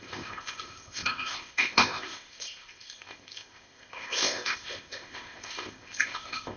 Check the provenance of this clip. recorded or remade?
remade